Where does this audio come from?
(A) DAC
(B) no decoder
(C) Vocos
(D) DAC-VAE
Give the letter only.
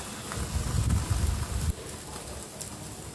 B